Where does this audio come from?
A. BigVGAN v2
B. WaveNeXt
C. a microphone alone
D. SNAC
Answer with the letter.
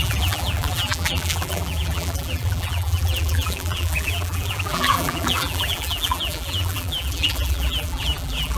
A